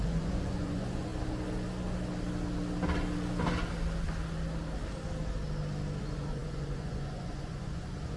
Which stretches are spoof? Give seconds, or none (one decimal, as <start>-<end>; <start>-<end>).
0.0-1.1; 6.0-8.2